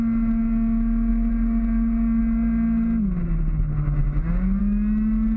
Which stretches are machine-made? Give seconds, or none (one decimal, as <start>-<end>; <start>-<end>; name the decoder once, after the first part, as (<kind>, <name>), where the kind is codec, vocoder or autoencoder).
none